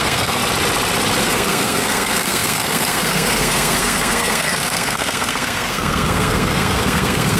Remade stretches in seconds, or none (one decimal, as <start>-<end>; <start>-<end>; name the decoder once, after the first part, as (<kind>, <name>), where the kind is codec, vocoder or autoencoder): 0.0-0.4 (codec, SNAC); 1.2-7.4